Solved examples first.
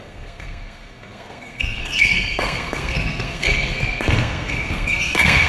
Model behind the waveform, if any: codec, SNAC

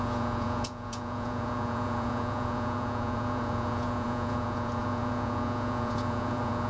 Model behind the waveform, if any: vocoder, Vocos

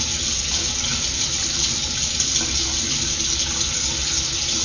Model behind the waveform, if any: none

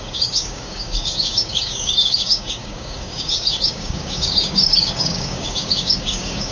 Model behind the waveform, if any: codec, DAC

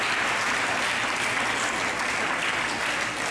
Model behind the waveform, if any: none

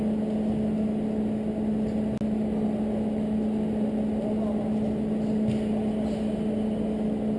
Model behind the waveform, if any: none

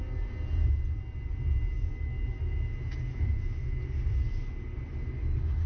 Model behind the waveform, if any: none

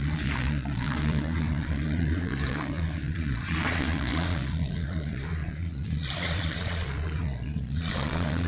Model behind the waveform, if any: vocoder, Vocos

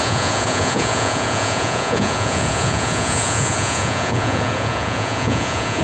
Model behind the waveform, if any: vocoder, Vocos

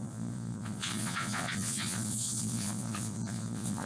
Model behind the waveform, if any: vocoder, Vocos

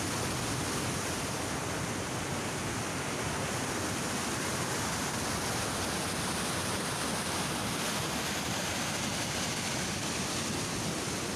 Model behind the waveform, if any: none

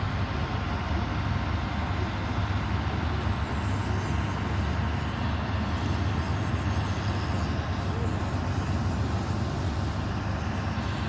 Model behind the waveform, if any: none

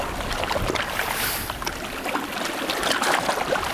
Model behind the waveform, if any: none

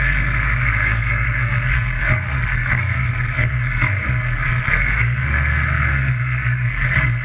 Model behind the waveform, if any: codec, SNAC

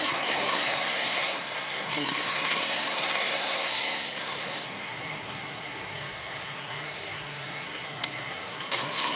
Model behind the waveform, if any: codec, SNAC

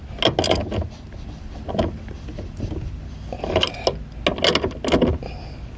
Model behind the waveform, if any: none